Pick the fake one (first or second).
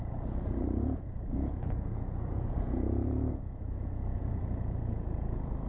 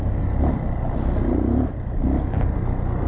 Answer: first